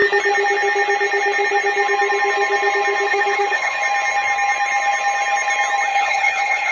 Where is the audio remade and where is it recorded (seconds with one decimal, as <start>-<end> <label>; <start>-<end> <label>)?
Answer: 0.0-3.1 recorded; 3.1-3.8 remade; 3.8-5.9 recorded; 5.9-6.7 remade